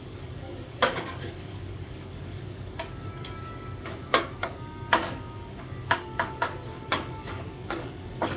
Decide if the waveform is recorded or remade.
remade